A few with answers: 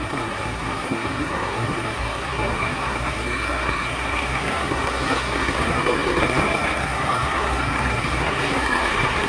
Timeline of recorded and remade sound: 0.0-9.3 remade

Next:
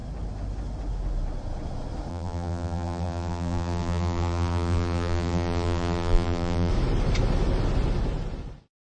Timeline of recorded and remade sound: 0.0-2.1 recorded; 2.1-6.7 remade; 6.7-8.9 recorded

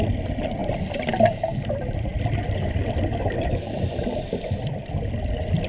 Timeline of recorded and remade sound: 0.0-2.1 recorded; 2.1-4.9 remade; 4.9-5.7 recorded

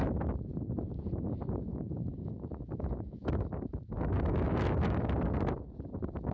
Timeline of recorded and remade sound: 0.0-1.7 recorded; 1.7-5.0 remade; 5.0-6.3 recorded

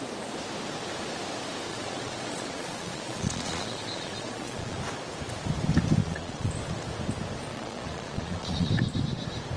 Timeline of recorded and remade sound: 0.0-1.7 recorded; 1.7-4.8 remade; 4.8-6.0 recorded; 6.0-6.5 remade; 6.5-7.5 recorded; 7.5-8.7 remade; 8.7-9.6 recorded

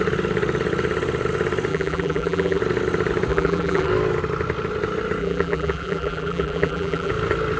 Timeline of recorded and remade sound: 0.0-1.7 recorded; 1.7-2.6 remade; 2.6-3.3 recorded; 3.3-3.9 remade; 3.9-5.2 recorded; 5.2-7.1 remade; 7.1-7.6 recorded